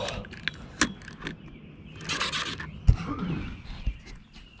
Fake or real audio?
real